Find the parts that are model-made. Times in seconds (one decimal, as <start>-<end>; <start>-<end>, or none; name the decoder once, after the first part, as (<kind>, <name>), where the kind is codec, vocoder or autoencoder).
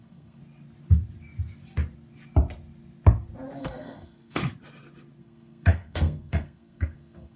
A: 0.0-0.4 (codec, SNAC); 3.6-4.4; 5.2-7.4